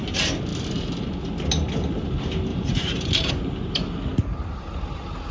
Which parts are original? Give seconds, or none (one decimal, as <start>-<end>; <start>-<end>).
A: 0.0-0.5; 1.1-2.5; 3.3-4.1; 4.7-5.3